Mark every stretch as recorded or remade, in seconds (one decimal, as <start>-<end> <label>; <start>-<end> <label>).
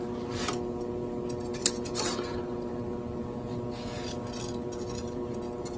0.0-5.8 recorded